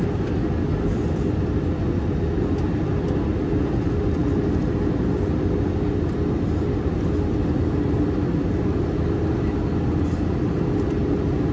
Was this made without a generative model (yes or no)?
yes